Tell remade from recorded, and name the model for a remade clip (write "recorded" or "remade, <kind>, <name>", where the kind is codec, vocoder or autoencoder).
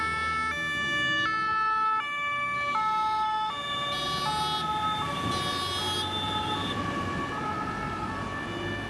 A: recorded